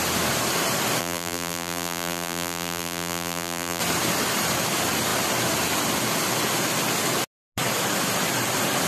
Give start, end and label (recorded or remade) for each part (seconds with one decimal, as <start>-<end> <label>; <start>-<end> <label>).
0.0-1.0 recorded; 1.0-3.8 remade; 3.8-8.9 recorded